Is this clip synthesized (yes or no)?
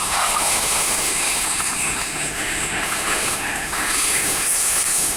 yes